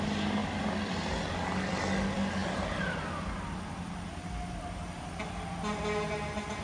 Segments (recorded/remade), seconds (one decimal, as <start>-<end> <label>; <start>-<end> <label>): 0.0-6.6 recorded